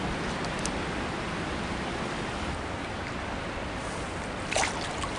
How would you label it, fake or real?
real